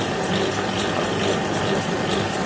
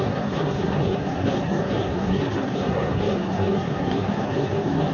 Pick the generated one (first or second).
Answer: second